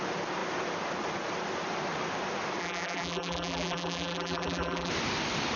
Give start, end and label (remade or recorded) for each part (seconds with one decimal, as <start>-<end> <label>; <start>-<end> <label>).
0.0-2.6 recorded; 2.6-4.9 remade; 4.9-5.6 recorded